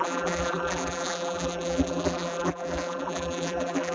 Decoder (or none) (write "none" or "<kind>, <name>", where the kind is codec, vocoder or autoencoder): vocoder, BigVGAN v2